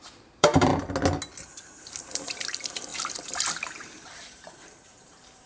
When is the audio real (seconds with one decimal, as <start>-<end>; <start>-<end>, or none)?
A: 0.7-1.8